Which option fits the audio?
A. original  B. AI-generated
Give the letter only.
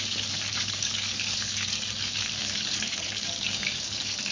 B